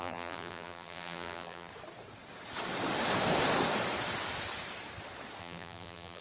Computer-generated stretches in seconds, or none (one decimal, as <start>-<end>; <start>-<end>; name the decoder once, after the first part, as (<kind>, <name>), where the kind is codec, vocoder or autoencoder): 0.0-1.7 (vocoder, BigVGAN v2); 5.4-6.2